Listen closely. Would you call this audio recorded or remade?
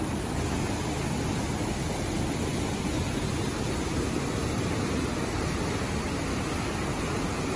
recorded